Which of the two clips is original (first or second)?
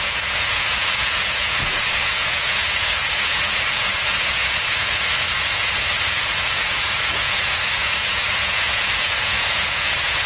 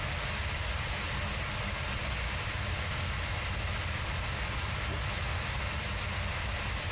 second